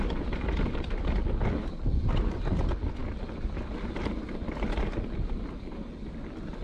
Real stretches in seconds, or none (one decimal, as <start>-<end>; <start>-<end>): 0.0-6.6